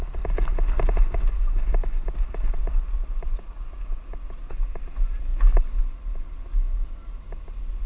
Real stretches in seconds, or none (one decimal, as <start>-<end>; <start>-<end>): 0.0-7.9